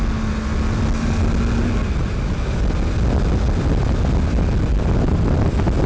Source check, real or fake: real